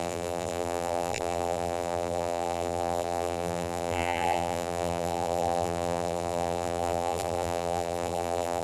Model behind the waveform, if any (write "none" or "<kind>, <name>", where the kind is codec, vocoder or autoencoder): vocoder, BigVGAN v2